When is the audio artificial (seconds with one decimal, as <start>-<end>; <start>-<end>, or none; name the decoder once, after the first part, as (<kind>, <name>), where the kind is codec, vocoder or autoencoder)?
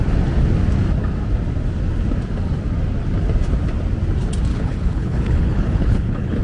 4.5-6.4 (codec, HILCodec)